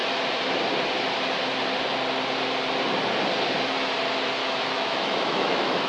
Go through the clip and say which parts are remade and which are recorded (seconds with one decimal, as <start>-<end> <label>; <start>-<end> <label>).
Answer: 0.0-4.4 recorded; 4.4-5.9 remade